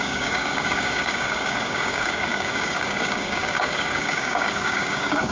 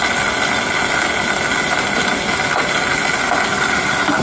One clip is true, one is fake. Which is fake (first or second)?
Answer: first